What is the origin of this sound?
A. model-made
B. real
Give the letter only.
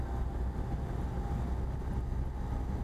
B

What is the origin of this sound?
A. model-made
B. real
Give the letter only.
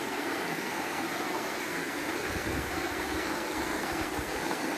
A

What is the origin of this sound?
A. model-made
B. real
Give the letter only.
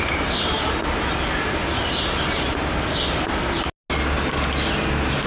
B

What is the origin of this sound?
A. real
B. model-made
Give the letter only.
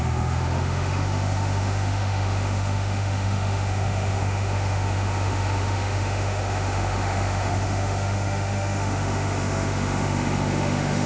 B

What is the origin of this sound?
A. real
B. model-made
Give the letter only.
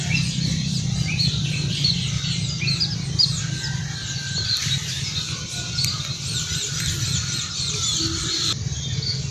A